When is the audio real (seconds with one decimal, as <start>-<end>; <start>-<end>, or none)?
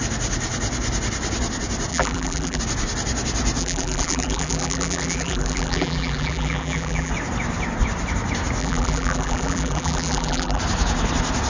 0.0-1.9; 2.6-3.6; 7.1-8.6; 10.6-11.5